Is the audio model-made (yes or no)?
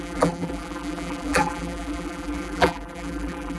yes